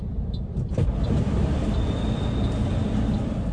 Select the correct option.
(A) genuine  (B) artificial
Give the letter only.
A